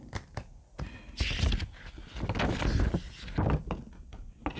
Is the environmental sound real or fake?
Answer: real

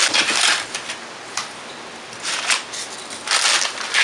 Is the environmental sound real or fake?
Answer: real